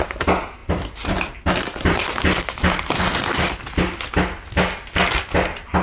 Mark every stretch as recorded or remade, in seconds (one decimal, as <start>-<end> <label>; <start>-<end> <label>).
0.0-0.6 recorded; 0.6-3.0 remade; 3.0-5.8 recorded

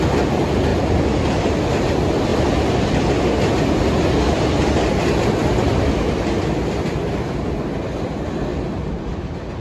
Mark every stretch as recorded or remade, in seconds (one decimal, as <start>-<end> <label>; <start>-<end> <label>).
0.0-9.6 recorded

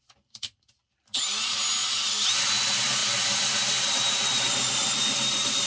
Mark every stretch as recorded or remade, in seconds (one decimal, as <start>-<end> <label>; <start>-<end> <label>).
0.0-5.7 remade

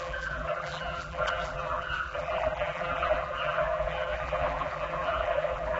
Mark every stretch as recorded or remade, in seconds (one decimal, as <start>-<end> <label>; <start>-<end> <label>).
0.0-5.8 remade

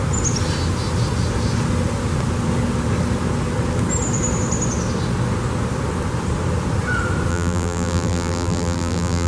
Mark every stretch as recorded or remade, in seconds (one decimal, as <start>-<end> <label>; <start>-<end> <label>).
0.0-7.3 recorded; 7.3-9.3 remade

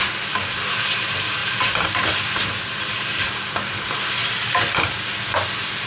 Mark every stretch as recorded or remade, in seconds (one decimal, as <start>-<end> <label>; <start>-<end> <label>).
0.0-1.4 recorded; 1.4-3.3 remade; 3.3-4.2 recorded; 4.2-4.8 remade; 4.8-5.9 recorded